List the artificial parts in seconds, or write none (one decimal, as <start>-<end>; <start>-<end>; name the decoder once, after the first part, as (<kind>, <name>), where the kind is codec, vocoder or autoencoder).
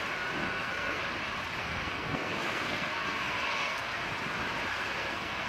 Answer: 0.4-1.0 (codec, SNAC); 1.6-4.0; 4.7-5.5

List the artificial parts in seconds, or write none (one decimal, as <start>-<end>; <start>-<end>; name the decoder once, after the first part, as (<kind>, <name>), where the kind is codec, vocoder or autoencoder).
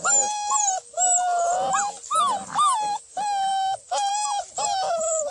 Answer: none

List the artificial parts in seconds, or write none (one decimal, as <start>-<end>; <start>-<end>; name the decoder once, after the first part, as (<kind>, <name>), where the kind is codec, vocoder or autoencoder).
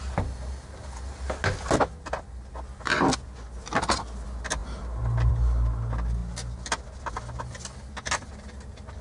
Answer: none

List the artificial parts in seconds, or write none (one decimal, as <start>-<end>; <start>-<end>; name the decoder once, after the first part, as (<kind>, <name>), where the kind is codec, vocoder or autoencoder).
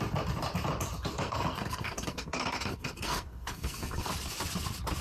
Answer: 1.1-4.1 (codec, SNAC)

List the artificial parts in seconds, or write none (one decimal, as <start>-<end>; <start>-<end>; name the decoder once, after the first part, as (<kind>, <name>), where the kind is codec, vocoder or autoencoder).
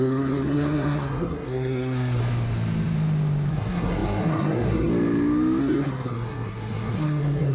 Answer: 0.0-2.2 (codec, SNAC); 3.5-4.9; 5.6-7.5